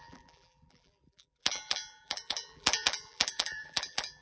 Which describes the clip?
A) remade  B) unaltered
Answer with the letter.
A